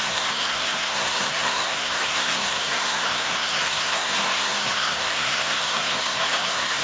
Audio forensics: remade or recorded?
remade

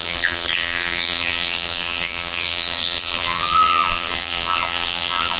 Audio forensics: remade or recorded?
remade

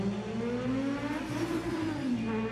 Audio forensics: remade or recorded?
recorded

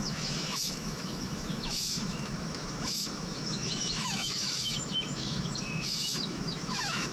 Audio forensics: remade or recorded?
remade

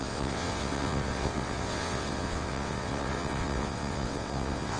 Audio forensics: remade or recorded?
remade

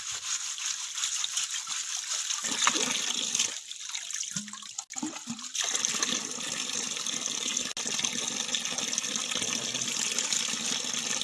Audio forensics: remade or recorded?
recorded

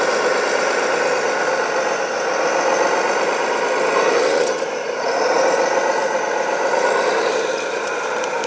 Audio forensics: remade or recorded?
recorded